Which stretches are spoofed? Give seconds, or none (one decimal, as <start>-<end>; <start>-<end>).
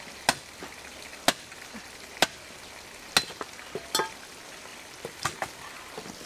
4.7-5.7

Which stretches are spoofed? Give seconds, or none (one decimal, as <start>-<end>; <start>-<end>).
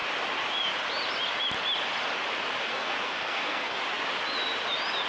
2.7-3.8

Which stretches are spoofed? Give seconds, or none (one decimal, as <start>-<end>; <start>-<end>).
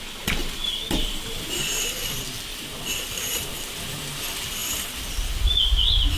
0.4-1.2; 2.5-3.5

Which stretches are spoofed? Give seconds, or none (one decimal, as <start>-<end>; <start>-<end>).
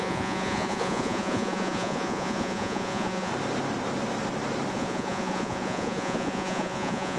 0.0-3.3; 4.7-7.2